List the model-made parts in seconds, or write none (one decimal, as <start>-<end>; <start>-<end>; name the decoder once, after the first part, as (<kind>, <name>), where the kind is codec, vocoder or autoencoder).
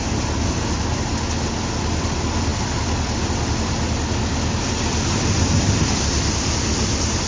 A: none